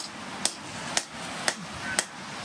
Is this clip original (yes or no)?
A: yes